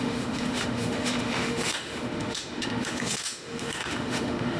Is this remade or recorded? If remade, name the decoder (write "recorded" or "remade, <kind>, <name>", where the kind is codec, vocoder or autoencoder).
remade, autoencoder, DAC-VAE